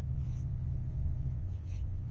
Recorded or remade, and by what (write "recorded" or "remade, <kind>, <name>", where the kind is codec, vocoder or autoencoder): remade, vocoder, Vocos